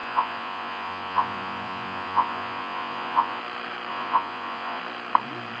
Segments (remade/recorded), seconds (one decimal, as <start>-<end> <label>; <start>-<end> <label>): 0.0-3.4 remade; 3.4-3.9 recorded; 3.9-4.8 remade; 4.8-5.6 recorded